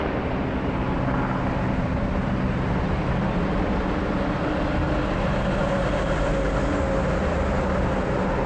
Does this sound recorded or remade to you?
recorded